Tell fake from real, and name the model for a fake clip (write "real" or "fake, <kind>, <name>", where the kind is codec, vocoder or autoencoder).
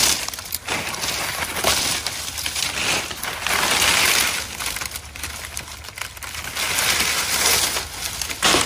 real